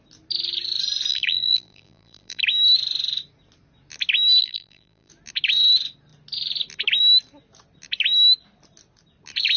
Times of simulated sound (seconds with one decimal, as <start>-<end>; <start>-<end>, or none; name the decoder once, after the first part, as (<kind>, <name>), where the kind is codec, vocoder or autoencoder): 1.1-2.4 (vocoder, BigVGAN v2); 4.4-5.1